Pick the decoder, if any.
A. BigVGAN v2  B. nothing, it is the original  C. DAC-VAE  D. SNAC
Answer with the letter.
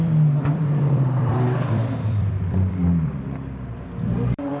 A